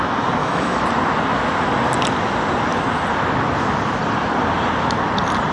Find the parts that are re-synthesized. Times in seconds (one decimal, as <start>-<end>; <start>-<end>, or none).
0.4-0.9